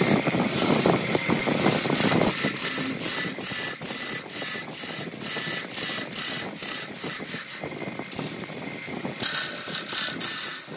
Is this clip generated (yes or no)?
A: no